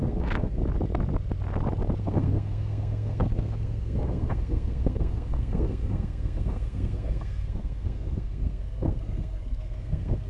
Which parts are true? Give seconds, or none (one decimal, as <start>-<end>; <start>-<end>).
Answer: 0.6-2.0